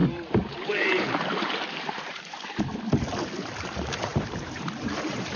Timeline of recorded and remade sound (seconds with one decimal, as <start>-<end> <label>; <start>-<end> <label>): 0.0-2.6 remade; 2.6-4.1 recorded; 4.1-5.4 remade